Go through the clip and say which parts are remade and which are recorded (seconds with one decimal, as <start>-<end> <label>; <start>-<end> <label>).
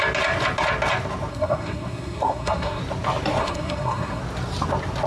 0.0-1.3 recorded; 1.3-2.8 remade; 2.8-3.4 recorded; 3.4-4.2 remade; 4.2-5.1 recorded